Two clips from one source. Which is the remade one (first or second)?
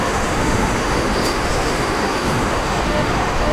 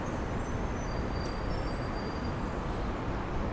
first